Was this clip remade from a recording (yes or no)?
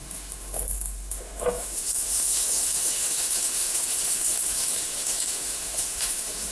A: yes